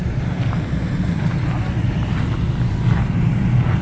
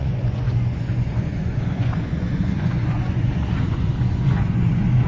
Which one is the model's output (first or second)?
second